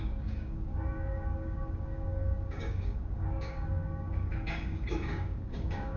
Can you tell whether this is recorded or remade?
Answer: remade